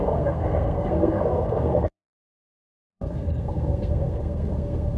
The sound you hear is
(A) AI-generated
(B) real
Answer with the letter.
A